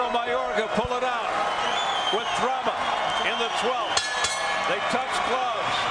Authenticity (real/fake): real